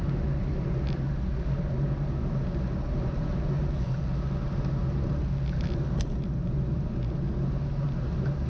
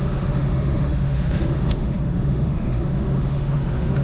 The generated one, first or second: second